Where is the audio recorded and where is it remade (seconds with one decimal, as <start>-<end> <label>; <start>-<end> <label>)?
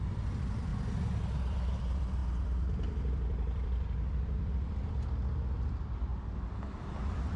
0.0-0.7 remade; 0.7-1.2 recorded; 1.2-7.4 remade